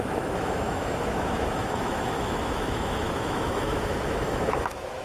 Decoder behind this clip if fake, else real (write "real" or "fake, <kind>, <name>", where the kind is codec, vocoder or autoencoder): fake, autoencoder, DAC-VAE